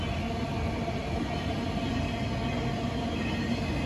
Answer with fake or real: real